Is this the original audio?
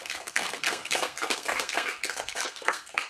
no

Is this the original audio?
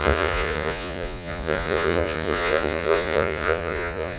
no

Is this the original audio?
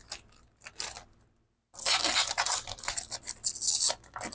yes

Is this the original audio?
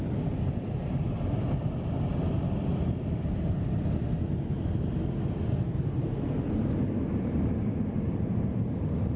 yes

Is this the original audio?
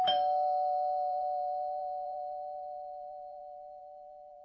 no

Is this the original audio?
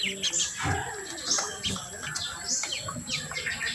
yes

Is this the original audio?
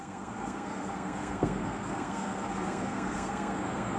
no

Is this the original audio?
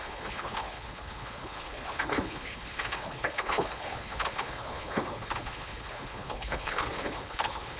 no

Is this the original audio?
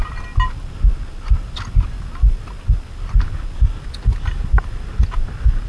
yes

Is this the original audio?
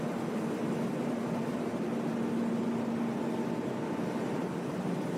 yes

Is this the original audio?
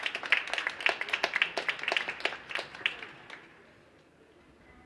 yes